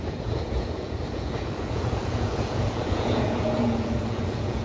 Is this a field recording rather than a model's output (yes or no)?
no